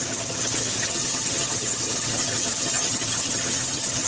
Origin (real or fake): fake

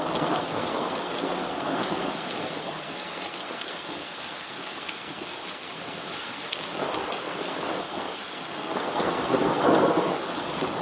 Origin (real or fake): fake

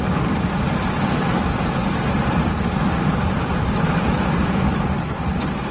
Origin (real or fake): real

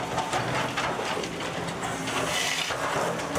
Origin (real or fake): real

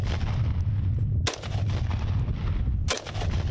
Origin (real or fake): real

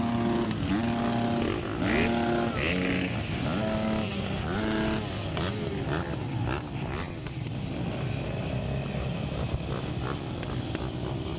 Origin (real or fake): real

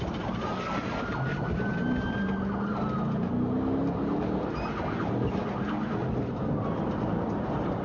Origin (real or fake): real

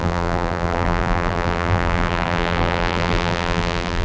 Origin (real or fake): fake